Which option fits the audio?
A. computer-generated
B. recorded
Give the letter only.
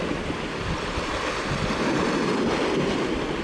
B